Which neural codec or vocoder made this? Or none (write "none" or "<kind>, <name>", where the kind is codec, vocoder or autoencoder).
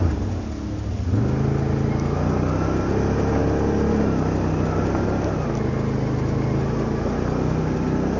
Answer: none